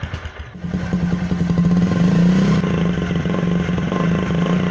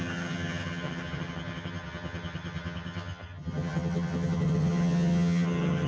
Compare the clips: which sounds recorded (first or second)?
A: first